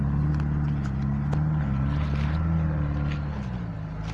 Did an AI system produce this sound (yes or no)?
no